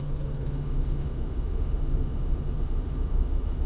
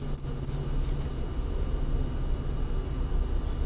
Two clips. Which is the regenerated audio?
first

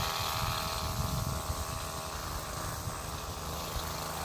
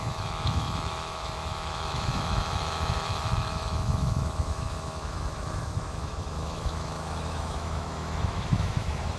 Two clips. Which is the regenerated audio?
second